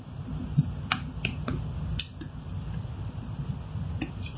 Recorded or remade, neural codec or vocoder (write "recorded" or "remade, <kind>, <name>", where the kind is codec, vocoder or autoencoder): recorded